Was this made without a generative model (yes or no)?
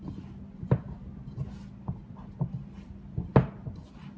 yes